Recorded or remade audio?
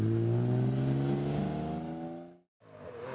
recorded